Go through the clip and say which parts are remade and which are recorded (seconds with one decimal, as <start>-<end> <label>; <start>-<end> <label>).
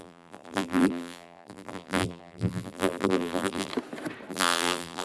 0.0-3.7 remade; 3.7-4.3 recorded; 4.3-5.0 remade